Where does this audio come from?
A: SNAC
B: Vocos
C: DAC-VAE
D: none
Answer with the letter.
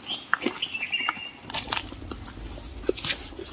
D